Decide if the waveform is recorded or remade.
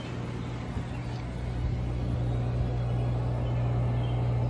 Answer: recorded